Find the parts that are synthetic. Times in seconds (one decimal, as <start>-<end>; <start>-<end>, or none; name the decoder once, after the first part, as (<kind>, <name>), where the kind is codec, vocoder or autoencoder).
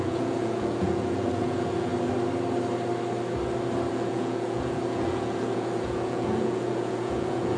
0.0-1.9 (vocoder, Vocos); 3.9-7.6